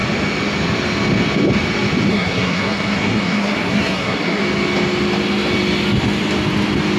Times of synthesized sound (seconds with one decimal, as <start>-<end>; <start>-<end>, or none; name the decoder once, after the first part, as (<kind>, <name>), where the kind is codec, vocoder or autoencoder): 2.1-4.4 (codec, SNAC)